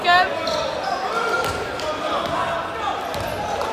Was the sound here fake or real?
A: real